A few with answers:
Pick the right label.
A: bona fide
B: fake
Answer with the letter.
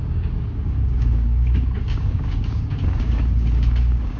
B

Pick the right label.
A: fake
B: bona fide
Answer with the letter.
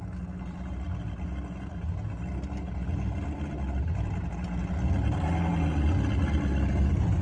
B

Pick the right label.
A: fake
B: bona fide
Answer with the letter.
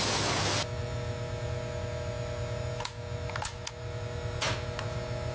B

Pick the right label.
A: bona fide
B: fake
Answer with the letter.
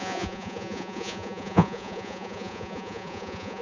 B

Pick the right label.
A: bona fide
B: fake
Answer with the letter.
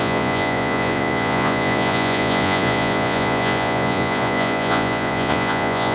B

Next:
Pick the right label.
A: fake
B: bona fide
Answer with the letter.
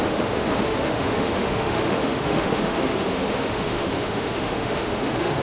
A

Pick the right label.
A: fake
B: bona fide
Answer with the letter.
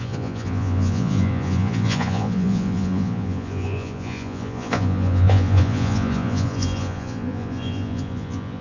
A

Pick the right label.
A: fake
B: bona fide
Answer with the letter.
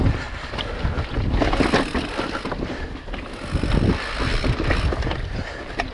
B